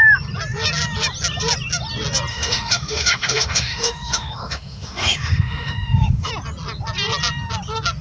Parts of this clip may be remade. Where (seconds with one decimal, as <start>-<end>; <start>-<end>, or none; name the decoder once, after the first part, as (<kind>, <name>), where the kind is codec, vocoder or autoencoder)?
2.3-6.3 (autoencoder, DAC-VAE)